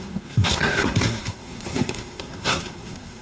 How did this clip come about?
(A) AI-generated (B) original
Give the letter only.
A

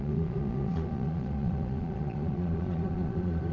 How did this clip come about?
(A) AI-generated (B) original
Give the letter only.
A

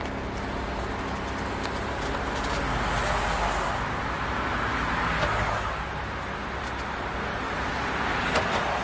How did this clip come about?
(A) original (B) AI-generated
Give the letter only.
A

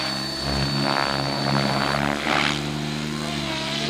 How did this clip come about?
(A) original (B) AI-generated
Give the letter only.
A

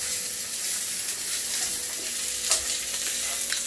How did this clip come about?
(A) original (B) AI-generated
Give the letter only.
A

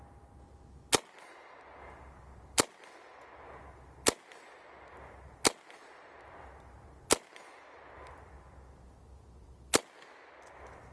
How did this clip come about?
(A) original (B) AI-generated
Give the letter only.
A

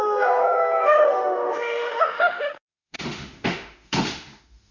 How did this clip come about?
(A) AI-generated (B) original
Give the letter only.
A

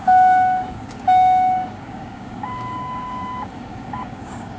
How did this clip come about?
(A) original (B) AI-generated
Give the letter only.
B